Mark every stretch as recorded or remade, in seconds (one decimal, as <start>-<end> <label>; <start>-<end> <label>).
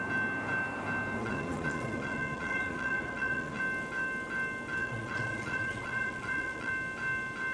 0.0-1.2 recorded; 1.2-3.6 remade; 3.6-4.8 recorded; 4.8-6.7 remade; 6.7-7.5 recorded